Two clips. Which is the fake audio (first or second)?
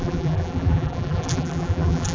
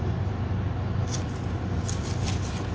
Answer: first